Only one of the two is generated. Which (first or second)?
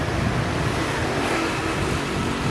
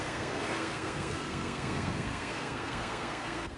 second